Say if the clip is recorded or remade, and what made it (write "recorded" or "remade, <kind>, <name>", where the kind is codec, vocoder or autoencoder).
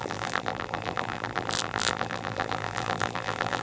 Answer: remade, vocoder, BigVGAN v2